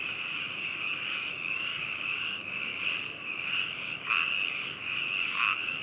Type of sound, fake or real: fake